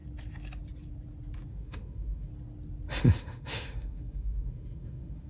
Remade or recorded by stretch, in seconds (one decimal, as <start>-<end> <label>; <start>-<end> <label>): 0.0-1.5 recorded; 1.5-2.3 remade; 2.3-3.0 recorded; 3.0-5.3 remade